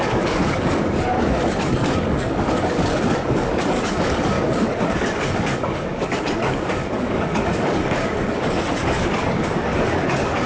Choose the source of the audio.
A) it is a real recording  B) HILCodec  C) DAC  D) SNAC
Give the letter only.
C